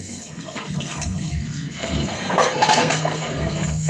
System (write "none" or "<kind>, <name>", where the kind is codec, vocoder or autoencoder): codec, SNAC